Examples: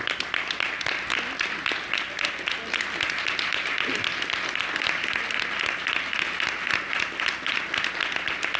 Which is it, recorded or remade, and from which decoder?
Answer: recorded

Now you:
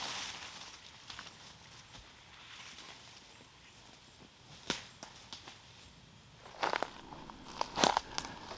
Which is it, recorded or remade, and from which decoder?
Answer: recorded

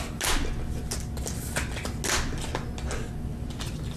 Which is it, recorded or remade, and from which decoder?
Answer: recorded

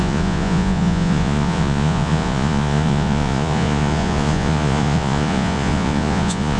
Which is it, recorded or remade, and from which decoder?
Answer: remade, vocoder, Vocos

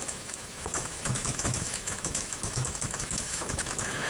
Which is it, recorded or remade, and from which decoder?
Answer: remade, autoencoder, DAC-VAE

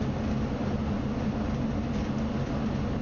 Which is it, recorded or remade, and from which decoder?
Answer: recorded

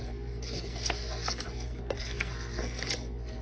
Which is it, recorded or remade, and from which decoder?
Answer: remade, codec, SNAC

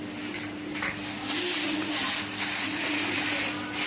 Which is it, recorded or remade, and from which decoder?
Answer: recorded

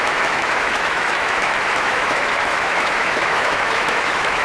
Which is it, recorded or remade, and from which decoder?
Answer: remade, autoencoder, DAC-VAE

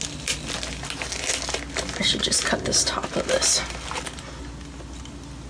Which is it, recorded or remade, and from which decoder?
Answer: recorded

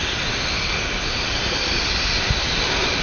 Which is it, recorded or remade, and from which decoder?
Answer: recorded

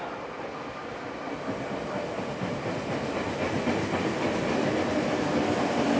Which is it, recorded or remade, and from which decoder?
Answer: recorded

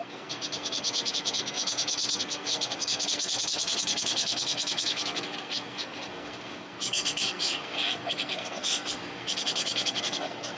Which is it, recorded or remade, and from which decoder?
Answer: remade, codec, SNAC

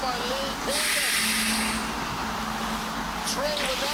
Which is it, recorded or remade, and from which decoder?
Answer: recorded